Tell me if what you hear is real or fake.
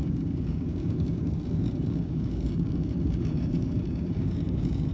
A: fake